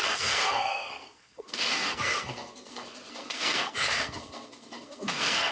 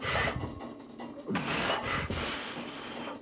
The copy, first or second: first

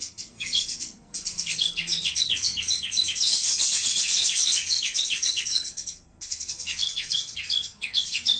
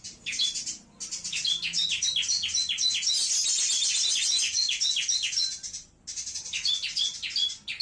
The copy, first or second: first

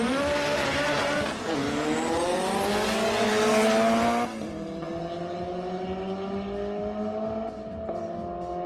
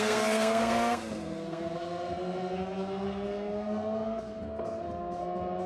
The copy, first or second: second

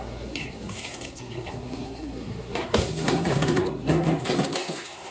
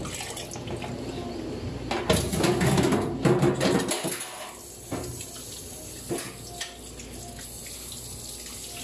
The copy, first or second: first